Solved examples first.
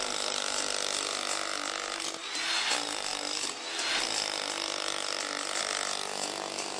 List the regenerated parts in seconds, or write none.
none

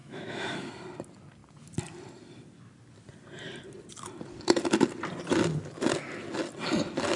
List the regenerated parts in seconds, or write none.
0.0-0.7 (autoencoder, DAC-VAE)

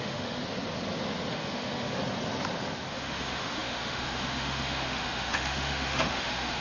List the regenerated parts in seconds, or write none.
0.0-0.4 (autoencoder, DAC-VAE); 1.3-2.0; 2.9-6.6

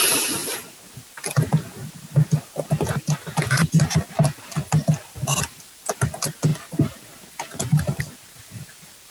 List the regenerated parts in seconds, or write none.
none